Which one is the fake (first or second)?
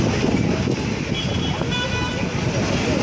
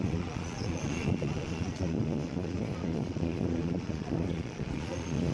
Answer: second